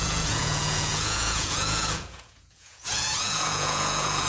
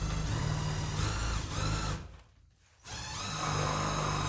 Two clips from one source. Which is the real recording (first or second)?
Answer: second